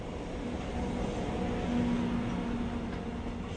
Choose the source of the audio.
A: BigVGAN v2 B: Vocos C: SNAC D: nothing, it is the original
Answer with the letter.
D